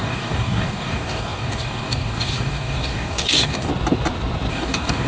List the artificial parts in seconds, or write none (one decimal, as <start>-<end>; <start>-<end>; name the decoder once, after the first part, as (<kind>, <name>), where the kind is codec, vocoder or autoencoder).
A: 0.0-3.7 (codec, DAC); 4.5-5.1